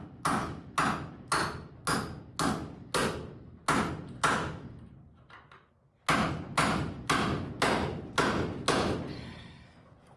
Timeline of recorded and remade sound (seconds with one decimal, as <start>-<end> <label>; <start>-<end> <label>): 0.0-10.2 recorded